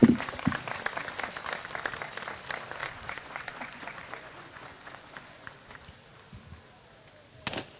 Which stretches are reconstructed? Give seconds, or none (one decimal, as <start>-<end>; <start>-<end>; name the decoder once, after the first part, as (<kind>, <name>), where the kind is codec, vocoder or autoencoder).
0.0-0.6 (vocoder, Vocos); 2.8-5.7